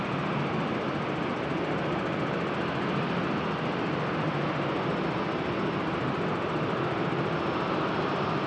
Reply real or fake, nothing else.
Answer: real